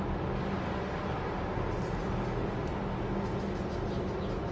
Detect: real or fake real